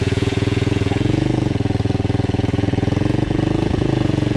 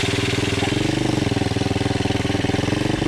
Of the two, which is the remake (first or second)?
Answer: first